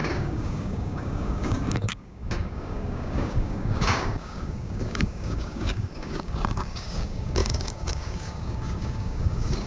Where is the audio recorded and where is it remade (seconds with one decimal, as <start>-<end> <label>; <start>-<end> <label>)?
0.0-9.7 remade